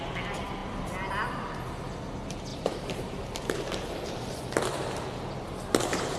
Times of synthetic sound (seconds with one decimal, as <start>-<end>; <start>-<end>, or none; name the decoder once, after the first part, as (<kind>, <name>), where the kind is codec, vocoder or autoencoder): 2.5-4.4 (vocoder, BigVGAN v2)